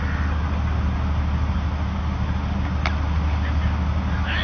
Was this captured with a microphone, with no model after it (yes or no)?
yes